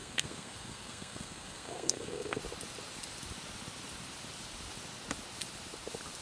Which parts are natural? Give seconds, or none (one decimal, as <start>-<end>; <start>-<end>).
2.4-6.2